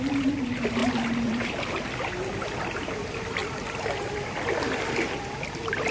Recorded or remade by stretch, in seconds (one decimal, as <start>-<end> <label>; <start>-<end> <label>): 0.0-5.9 remade